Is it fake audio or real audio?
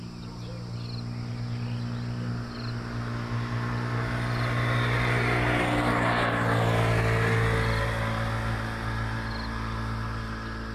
real